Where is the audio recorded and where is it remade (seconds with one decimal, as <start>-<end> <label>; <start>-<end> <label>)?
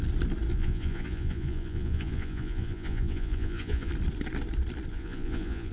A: 0.0-0.5 recorded; 0.5-3.9 remade; 3.9-4.9 recorded; 4.9-5.7 remade